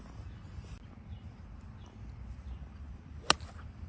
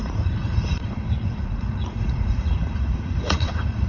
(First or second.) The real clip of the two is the first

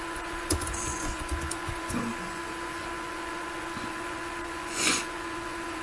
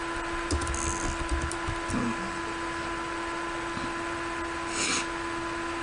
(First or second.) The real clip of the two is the second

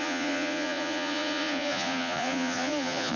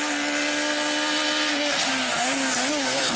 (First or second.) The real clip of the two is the second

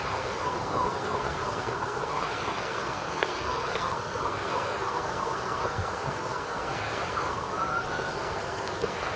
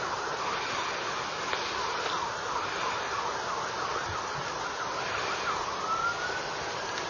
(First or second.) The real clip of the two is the second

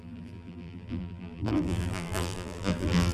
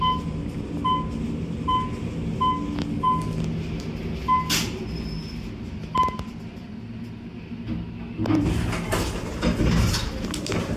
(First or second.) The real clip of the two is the second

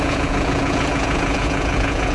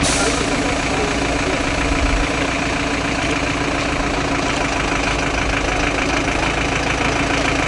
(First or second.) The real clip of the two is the second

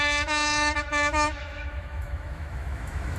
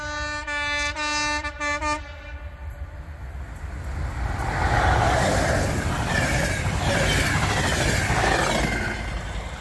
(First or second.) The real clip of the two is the second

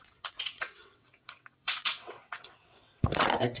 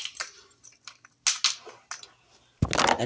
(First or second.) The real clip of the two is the second